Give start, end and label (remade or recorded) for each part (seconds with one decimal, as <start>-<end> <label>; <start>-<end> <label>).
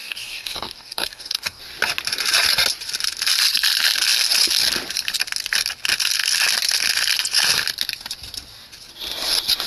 0.0-1.6 remade; 1.6-9.7 recorded